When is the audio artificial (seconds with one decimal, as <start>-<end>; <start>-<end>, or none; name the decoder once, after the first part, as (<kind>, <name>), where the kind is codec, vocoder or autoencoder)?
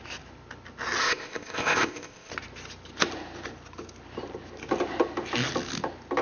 1.0-2.3 (codec, ZipCodec)